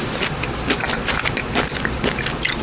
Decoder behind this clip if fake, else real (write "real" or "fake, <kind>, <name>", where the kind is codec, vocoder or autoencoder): real